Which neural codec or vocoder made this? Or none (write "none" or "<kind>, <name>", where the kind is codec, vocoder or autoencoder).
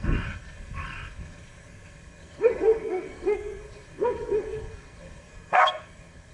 codec, SNAC